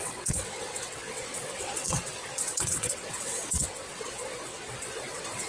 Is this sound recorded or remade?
remade